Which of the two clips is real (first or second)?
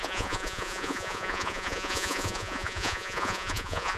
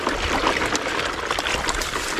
second